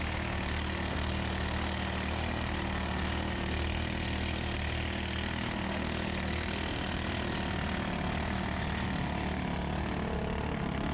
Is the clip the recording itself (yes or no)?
yes